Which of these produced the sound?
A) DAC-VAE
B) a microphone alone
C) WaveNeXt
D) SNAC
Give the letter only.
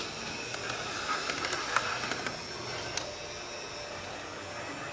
B